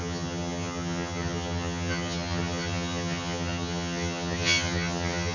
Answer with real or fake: fake